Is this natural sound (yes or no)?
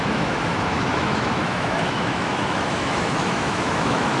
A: no